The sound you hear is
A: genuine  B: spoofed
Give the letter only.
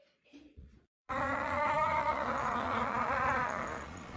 B